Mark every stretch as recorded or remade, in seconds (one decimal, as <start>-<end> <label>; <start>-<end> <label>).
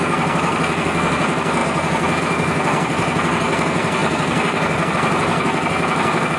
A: 0.0-6.4 remade